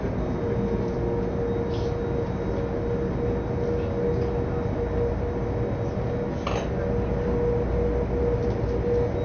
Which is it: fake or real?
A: real